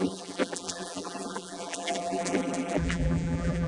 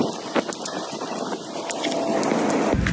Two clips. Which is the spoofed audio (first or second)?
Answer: first